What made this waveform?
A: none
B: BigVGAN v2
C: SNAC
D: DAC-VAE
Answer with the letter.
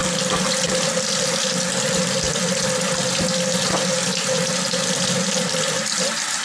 A